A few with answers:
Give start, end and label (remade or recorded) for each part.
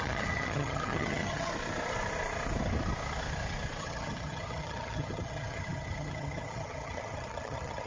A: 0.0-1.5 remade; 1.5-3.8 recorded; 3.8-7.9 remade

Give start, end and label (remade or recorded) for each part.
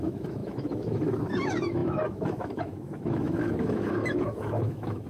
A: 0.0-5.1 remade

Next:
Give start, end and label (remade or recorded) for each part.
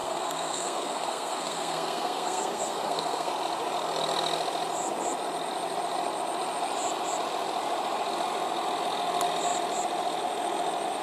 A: 0.0-3.3 remade; 3.3-11.0 recorded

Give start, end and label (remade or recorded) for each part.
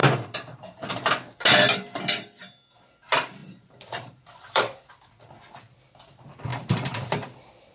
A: 0.0-0.9 remade; 0.9-3.4 recorded; 3.4-4.9 remade; 4.9-6.5 recorded; 6.5-7.1 remade; 7.1-7.7 recorded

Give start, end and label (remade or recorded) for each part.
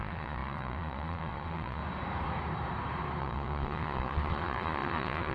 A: 0.0-1.8 remade; 1.8-3.2 recorded; 3.2-5.3 remade